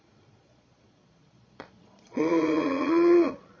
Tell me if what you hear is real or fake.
fake